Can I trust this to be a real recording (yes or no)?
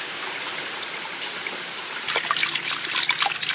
yes